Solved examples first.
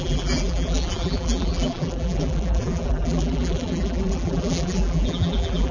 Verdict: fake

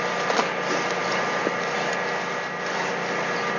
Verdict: real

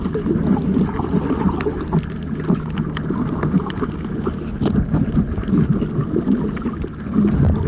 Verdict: real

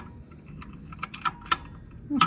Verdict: real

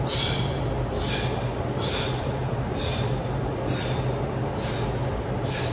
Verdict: real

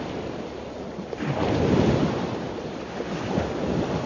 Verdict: fake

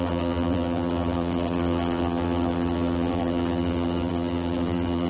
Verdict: fake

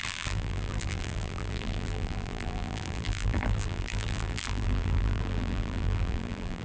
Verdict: fake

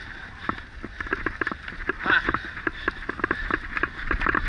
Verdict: real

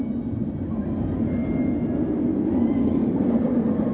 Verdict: real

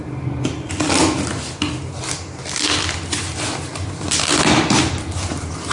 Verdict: fake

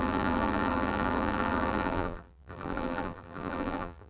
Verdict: fake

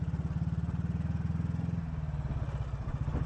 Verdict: real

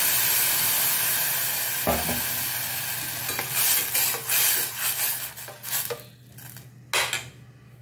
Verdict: real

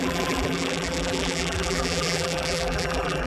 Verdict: fake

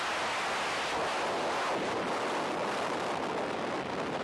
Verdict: real